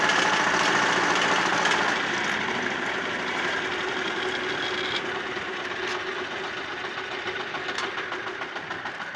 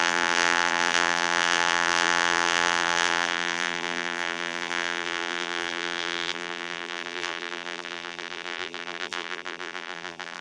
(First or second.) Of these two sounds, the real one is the first